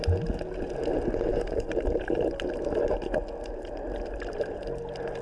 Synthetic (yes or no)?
no